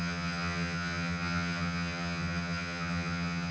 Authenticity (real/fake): fake